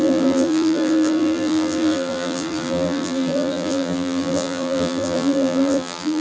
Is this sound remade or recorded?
remade